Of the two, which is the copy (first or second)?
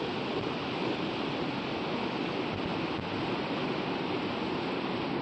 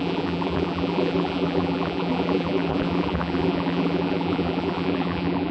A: second